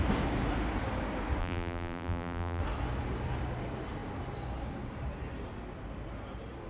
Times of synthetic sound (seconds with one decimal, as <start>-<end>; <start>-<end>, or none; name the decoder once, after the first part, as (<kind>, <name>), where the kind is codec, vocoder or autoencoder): 1.4-2.6 (vocoder, BigVGAN v2)